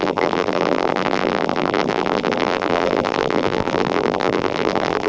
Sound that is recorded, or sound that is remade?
remade